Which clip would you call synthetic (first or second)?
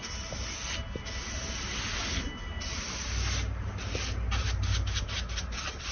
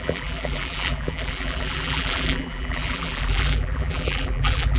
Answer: second